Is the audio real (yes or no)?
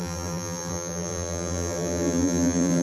no